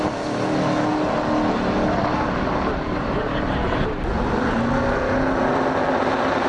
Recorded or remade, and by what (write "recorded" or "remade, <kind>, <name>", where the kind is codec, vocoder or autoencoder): recorded